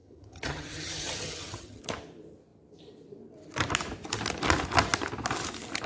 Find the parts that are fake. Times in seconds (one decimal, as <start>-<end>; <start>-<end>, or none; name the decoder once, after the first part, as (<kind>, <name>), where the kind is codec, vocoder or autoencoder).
0.0-1.8 (vocoder, HiFi-GAN)

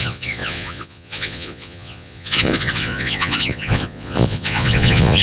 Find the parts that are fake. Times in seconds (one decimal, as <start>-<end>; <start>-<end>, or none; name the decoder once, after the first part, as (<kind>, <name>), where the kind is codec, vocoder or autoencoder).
0.0-5.2 (vocoder, Vocos)

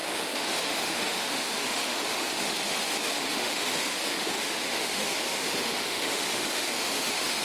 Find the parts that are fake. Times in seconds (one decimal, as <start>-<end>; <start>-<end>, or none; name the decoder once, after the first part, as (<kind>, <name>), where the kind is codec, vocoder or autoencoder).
0.0-7.4 (autoencoder, DAC-VAE)

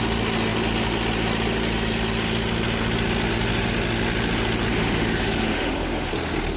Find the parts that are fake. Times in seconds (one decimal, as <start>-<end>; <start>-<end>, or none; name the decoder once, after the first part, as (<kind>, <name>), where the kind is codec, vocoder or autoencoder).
4.7-6.1 (autoencoder, DAC-VAE)

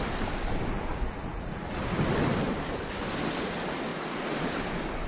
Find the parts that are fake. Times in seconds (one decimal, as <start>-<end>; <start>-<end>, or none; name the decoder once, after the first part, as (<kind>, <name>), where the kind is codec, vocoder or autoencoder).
0.9-1.8 (vocoder, Vocos); 3.9-4.5

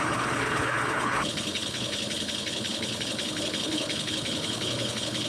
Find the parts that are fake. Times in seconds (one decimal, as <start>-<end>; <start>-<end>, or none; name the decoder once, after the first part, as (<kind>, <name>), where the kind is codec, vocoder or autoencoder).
0.0-5.3 (codec, HILCodec)

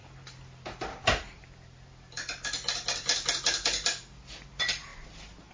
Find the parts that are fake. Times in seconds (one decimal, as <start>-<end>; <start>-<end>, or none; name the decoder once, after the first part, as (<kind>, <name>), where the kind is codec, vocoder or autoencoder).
none

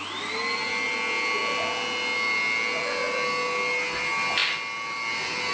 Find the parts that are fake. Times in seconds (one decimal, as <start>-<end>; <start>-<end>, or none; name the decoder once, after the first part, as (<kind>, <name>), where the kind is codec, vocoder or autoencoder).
none